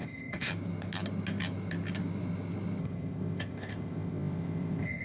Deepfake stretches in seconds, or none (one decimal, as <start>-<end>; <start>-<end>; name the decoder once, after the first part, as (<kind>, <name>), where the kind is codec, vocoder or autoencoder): 0.0-0.5 (codec, ZipCodec); 2.8-5.0